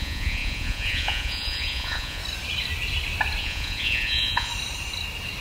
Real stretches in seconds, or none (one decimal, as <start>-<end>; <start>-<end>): 2.2-3.4; 4.5-5.4